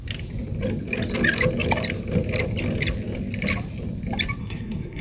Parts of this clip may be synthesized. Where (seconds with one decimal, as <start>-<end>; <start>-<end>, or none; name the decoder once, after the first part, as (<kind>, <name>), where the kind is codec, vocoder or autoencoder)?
4.4-5.0 (codec, SNAC)

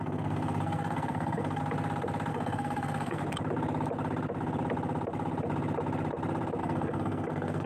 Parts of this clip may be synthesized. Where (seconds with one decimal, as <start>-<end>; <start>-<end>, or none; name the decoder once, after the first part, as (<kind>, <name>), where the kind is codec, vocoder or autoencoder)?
0.0-1.6 (codec, SNAC); 2.3-3.2; 6.6-7.7

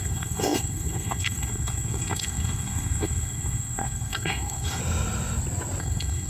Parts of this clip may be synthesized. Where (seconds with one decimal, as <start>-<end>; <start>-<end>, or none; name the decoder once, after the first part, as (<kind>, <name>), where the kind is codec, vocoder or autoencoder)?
0.0-4.8 (codec, SNAC); 5.8-6.3

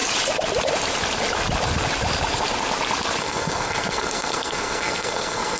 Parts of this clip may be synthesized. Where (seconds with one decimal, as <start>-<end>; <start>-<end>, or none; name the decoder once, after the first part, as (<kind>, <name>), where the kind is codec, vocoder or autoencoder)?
3.2-5.6 (codec, SNAC)